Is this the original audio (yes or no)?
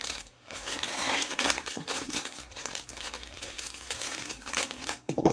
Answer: no